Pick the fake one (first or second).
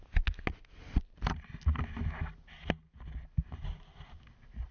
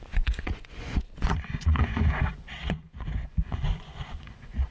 second